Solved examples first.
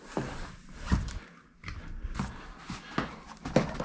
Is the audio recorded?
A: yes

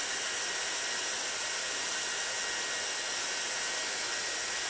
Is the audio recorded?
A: yes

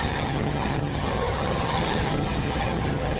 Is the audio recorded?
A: no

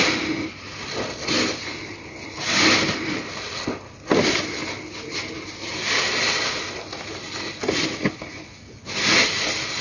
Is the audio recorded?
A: yes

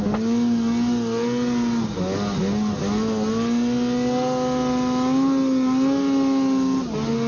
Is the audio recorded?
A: yes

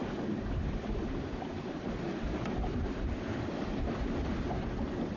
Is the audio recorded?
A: yes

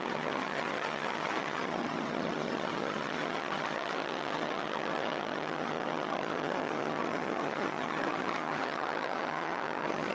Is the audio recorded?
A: no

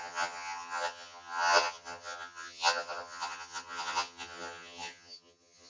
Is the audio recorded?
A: no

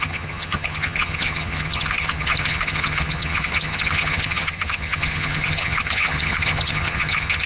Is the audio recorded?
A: no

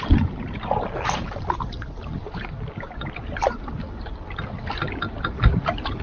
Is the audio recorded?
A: yes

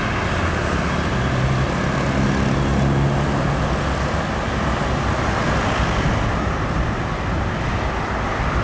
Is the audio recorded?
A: yes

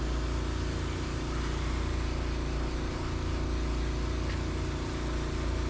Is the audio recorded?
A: yes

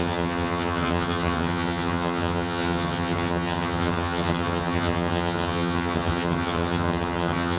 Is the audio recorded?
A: no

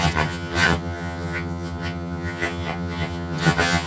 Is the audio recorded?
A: no